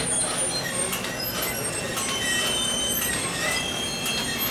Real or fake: real